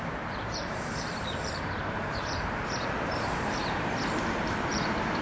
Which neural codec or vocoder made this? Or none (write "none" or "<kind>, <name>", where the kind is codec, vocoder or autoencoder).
vocoder, BigVGAN v2